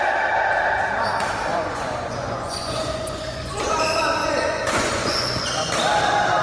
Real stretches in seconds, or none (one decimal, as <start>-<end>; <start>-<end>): 0.0-1.5; 3.8-4.2; 5.7-6.4